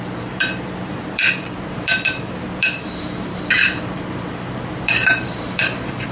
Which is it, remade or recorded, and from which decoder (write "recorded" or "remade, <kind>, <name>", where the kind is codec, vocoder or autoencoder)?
remade, vocoder, BigVGAN v2